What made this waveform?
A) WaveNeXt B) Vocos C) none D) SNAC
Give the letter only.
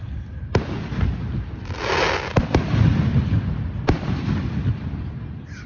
C